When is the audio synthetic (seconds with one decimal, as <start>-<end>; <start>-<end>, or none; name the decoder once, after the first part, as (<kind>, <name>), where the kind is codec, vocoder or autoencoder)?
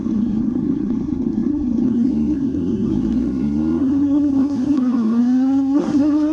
0.0-6.3 (codec, SNAC)